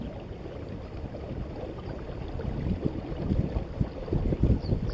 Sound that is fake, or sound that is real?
real